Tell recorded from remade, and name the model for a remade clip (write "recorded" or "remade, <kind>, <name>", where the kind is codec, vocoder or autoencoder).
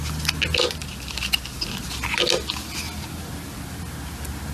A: recorded